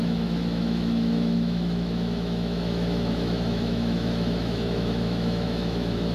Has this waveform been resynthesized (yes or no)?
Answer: yes